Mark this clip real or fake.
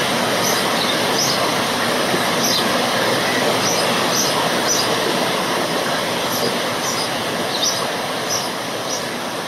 real